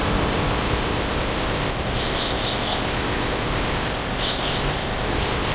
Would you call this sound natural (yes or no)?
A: no